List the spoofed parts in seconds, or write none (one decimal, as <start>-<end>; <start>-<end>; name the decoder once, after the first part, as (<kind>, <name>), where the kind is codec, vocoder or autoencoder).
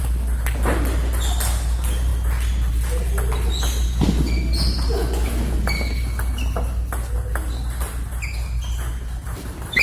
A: none